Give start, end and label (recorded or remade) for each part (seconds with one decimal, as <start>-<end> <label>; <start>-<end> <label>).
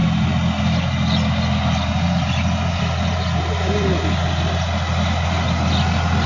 0.0-6.3 recorded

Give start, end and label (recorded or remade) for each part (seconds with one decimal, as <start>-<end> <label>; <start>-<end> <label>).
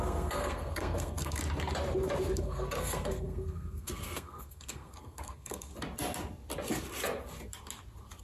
0.0-1.4 remade; 1.4-2.4 recorded; 2.4-5.7 remade; 5.7-8.2 recorded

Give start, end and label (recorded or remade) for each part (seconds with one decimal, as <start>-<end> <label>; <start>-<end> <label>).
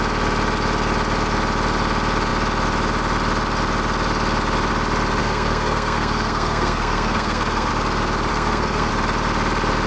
0.0-5.2 recorded; 5.2-7.7 remade; 7.7-8.3 recorded; 8.3-8.9 remade; 8.9-9.9 recorded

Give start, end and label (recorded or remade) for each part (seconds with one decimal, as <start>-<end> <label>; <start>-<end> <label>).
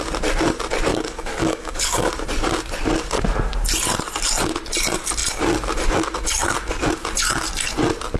0.0-0.9 recorded; 0.9-2.1 remade; 2.1-8.2 recorded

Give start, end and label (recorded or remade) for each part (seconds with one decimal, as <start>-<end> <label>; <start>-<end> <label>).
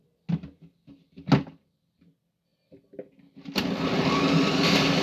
0.0-5.0 recorded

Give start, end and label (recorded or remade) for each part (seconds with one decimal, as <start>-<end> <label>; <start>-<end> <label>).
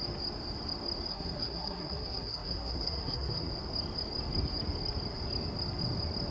0.0-1.1 recorded; 1.1-3.5 remade; 3.5-6.3 recorded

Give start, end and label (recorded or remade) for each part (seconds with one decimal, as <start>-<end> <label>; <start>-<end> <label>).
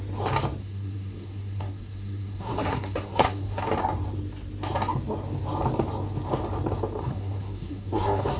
0.0-0.6 recorded; 0.6-3.6 remade; 3.6-7.0 recorded; 7.0-8.4 remade